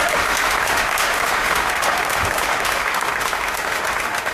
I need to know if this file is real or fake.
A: fake